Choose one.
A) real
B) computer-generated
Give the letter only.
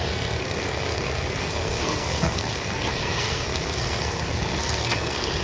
B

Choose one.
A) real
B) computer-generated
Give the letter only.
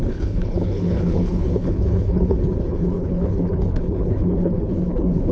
B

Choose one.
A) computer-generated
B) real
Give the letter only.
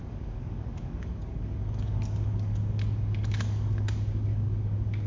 A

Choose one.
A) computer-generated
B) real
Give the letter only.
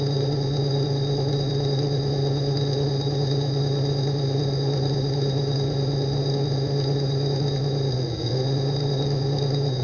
B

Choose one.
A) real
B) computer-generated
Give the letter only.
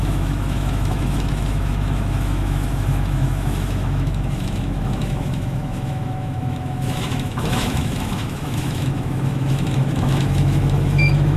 B